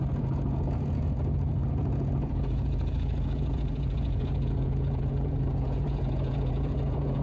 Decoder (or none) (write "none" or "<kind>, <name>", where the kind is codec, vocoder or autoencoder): vocoder, Vocos